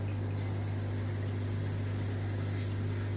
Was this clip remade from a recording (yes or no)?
no